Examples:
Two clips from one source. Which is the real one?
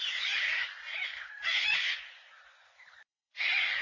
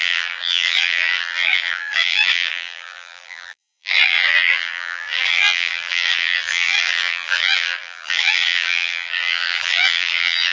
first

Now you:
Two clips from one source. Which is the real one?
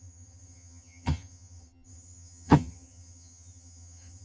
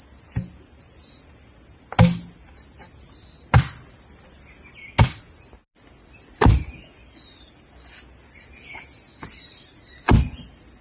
second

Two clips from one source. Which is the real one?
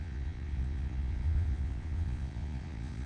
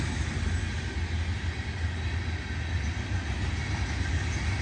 second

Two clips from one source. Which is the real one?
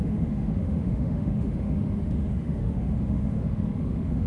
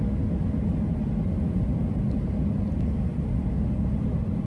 second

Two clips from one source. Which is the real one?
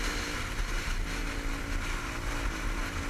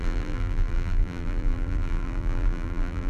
first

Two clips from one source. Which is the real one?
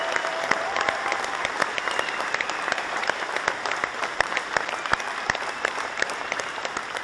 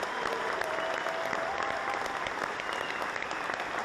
second